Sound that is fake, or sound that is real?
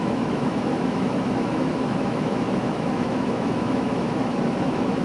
fake